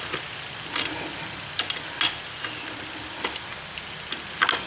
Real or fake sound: real